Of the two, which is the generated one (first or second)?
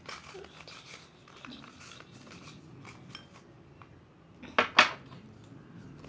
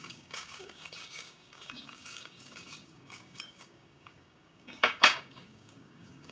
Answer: second